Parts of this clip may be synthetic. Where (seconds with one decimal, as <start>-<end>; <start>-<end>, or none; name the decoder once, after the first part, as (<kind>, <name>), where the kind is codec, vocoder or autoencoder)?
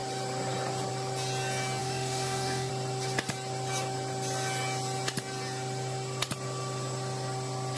1.8-2.7 (autoencoder, DAC-VAE)